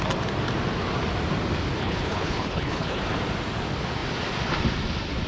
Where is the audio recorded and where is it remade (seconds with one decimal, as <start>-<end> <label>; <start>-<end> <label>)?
0.0-1.8 recorded; 1.8-3.0 remade; 3.0-5.3 recorded